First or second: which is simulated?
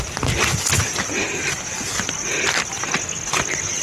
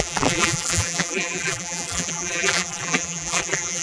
second